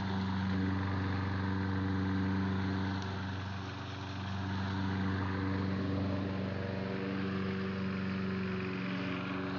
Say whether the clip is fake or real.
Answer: real